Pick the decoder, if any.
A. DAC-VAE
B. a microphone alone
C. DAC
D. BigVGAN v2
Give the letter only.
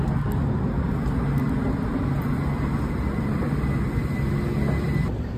B